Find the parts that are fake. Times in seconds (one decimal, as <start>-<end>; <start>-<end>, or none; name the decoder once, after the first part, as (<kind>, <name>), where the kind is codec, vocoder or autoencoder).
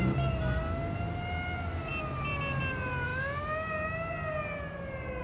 none